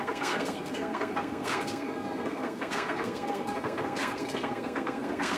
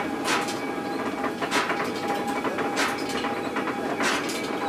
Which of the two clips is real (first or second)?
second